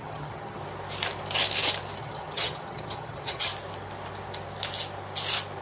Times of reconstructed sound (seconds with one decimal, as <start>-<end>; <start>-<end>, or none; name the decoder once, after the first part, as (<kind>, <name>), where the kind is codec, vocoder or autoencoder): 0.0-0.6 (vocoder, HiFi-GAN); 2.0-3.5